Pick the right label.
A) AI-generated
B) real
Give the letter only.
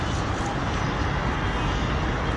B